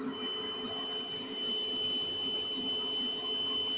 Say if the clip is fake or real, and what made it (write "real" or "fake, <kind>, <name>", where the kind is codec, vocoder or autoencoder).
real